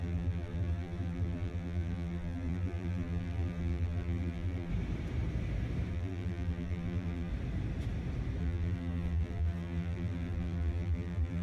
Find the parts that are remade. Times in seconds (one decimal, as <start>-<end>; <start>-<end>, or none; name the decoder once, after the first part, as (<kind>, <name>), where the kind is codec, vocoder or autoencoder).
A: 0.0-4.7 (vocoder, BigVGAN v2); 5.9-7.3; 8.4-11.4